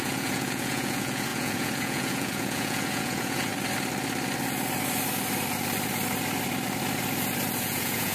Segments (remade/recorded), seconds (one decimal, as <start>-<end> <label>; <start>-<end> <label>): 0.0-3.5 remade; 3.5-7.6 recorded; 7.6-8.1 remade